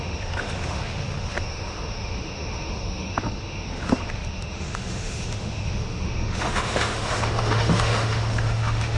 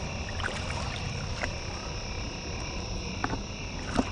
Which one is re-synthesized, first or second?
first